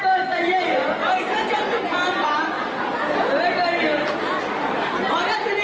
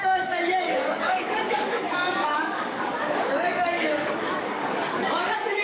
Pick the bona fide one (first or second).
first